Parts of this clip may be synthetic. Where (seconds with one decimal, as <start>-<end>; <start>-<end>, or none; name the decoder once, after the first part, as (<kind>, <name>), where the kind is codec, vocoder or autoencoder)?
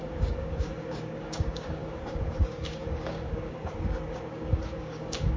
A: 0.0-5.4 (codec, DAC)